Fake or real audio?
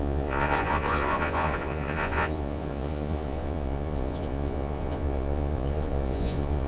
fake